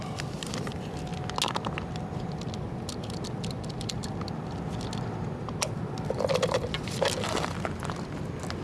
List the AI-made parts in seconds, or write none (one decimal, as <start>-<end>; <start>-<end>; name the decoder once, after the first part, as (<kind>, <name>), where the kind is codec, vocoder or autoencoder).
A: none